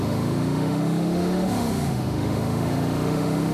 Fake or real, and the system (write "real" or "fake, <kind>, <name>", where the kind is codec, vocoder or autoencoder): fake, autoencoder, DAC-VAE